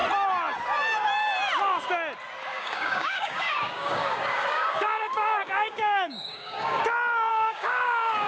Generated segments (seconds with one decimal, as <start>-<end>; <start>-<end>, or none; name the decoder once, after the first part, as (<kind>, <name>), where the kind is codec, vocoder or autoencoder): 2.5-6.8 (codec, DAC); 7.3-8.3